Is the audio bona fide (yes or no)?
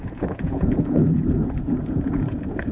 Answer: no